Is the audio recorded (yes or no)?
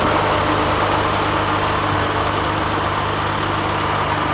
yes